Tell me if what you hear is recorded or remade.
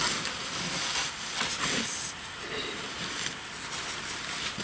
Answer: recorded